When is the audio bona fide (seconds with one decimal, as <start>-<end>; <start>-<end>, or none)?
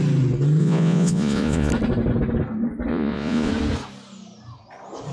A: 0.0-0.6; 1.7-2.9; 3.5-5.1